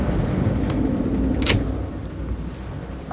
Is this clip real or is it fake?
real